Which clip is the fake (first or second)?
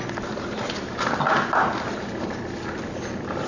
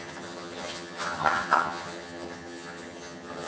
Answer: second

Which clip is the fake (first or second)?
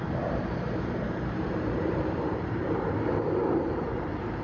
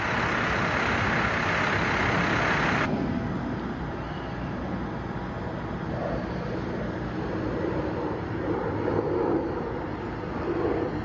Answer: first